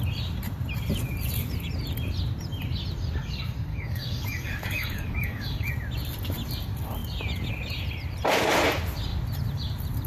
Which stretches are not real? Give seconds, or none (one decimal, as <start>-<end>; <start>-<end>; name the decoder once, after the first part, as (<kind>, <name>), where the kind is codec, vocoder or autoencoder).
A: 3.7-5.7 (codec, DAC)